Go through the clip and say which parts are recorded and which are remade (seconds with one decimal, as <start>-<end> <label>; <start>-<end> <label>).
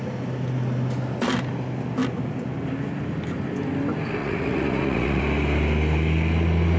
0.0-4.2 recorded; 4.2-5.2 remade; 5.2-6.8 recorded